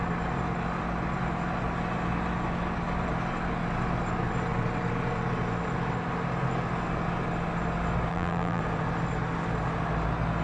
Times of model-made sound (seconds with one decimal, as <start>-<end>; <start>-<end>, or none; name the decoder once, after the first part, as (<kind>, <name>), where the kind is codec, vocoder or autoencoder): 8.1-8.6 (vocoder, BigVGAN v2)

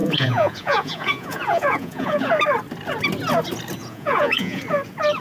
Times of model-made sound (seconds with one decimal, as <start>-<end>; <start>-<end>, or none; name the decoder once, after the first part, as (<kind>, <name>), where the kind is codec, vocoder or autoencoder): 0.0-2.3 (vocoder, Vocos); 3.8-4.6

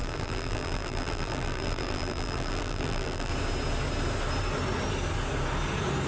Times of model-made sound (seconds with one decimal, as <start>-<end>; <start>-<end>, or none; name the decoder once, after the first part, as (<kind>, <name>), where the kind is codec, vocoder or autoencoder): 0.0-3.3 (vocoder, BigVGAN v2)

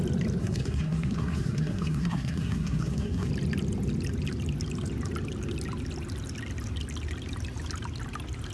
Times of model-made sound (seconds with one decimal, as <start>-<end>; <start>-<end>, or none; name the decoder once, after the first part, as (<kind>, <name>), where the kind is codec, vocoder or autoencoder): 0.4-3.3 (codec, SNAC)

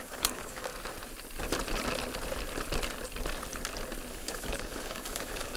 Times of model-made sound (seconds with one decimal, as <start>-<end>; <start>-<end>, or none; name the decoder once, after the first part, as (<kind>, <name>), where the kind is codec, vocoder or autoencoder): 0.0-0.7 (codec, DAC); 4.1-5.6

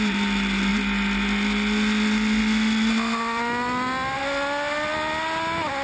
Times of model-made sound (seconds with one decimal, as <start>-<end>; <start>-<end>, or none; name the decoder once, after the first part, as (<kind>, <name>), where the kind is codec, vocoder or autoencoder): none

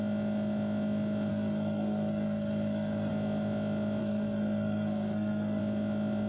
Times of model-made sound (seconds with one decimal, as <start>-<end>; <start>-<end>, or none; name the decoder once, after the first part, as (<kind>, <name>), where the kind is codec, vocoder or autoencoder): 1.3-3.1 (codec, SNAC); 4.0-5.6